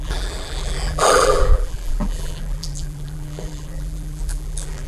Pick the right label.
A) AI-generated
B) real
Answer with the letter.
A